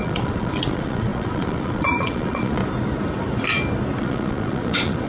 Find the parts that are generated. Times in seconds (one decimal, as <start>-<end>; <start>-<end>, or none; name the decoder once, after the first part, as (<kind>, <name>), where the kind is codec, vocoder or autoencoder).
0.0-2.6 (vocoder, Vocos); 4.0-5.1